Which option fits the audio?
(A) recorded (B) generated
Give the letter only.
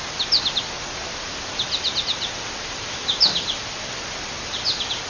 A